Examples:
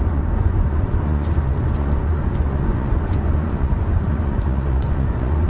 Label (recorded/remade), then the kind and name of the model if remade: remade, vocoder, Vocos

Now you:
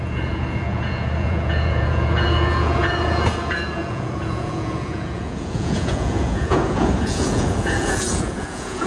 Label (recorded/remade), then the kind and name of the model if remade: remade, vocoder, Vocos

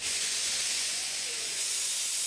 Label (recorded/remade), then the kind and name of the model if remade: remade, vocoder, Vocos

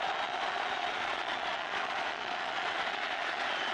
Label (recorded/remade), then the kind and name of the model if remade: remade, vocoder, Vocos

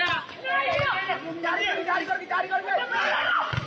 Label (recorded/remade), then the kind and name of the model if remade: recorded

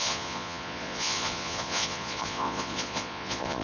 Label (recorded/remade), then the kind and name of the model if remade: remade, vocoder, Vocos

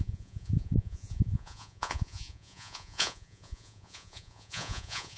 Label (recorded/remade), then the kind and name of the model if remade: remade, vocoder, Vocos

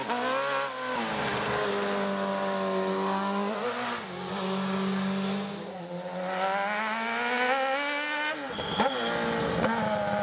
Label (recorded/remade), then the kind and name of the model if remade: recorded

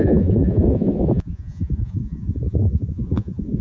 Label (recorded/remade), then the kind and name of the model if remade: remade, vocoder, Vocos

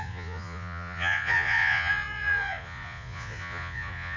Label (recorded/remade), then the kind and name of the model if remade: remade, vocoder, Vocos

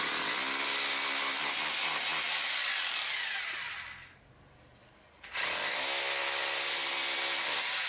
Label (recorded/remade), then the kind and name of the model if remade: recorded